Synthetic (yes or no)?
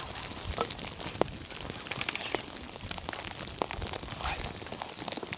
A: no